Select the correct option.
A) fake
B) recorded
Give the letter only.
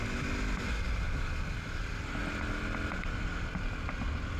B